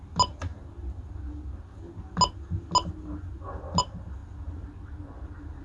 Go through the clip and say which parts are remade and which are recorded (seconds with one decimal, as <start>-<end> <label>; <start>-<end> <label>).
0.0-5.6 recorded